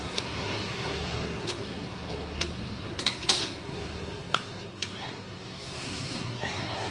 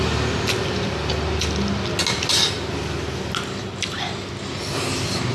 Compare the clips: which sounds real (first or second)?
second